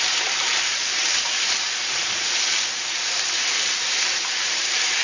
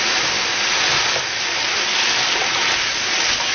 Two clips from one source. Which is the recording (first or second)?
second